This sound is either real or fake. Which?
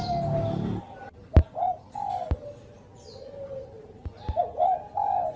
real